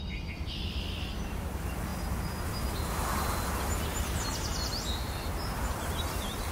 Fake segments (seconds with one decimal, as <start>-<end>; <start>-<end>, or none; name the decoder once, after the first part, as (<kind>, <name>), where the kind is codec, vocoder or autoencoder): none